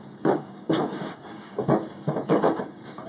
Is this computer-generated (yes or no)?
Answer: yes